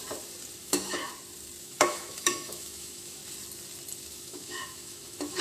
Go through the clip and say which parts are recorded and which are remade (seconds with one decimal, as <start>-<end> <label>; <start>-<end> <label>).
0.0-0.6 recorded; 0.6-1.0 remade; 1.0-1.6 recorded; 1.6-3.2 remade; 3.2-4.1 recorded; 4.1-5.4 remade